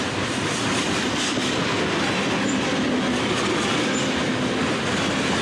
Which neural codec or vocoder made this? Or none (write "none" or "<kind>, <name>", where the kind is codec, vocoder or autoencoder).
none